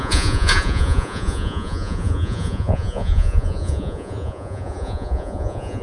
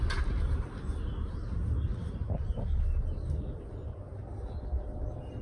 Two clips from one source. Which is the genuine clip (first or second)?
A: second